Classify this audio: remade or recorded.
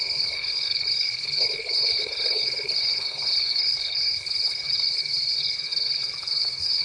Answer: remade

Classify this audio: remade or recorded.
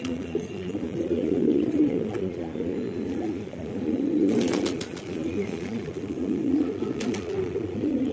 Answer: remade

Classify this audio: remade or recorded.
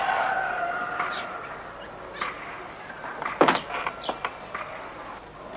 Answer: recorded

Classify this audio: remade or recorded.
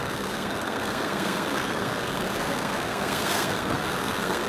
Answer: remade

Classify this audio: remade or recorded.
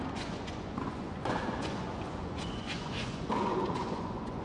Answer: remade